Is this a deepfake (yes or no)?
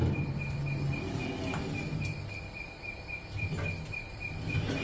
no